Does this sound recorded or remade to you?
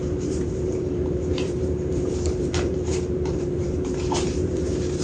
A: remade